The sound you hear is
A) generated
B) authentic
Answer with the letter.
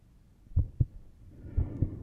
B